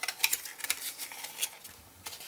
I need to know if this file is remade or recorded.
recorded